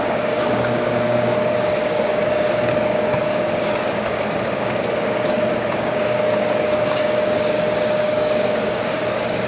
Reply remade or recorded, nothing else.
remade